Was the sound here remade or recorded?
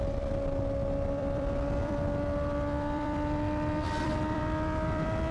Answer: remade